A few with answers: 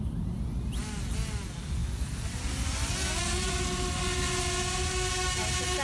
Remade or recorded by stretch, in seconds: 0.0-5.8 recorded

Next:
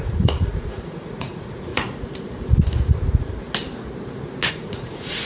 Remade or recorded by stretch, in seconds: 0.0-1.7 remade; 1.7-4.5 recorded; 4.5-5.2 remade

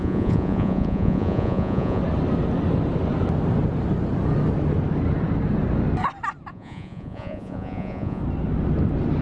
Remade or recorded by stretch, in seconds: 0.0-2.0 remade; 2.0-6.5 recorded; 6.5-8.2 remade; 8.2-9.2 recorded

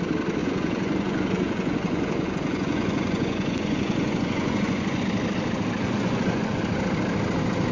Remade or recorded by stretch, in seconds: 0.0-0.4 recorded; 0.4-5.0 remade; 5.0-5.8 recorded; 5.8-6.6 remade; 6.6-7.7 recorded

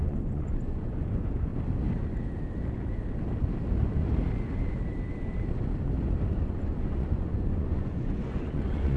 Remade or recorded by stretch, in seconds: 0.0-1.5 remade; 1.5-6.3 recorded; 6.3-9.0 remade

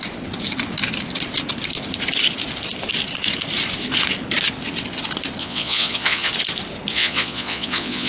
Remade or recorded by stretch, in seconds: 0.0-5.4 recorded; 5.4-6.3 remade; 6.3-6.9 recorded; 6.9-8.1 remade

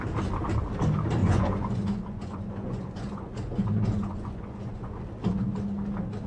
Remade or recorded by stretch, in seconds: 0.0-1.2 recorded; 1.2-5.0 remade; 5.0-6.3 recorded